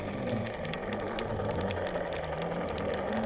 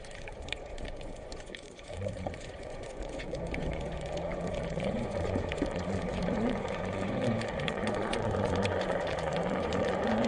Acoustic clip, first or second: first